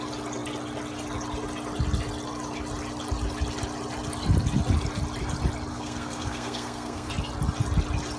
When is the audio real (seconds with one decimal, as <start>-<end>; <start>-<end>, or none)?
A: 0.0-5.7; 7.1-8.2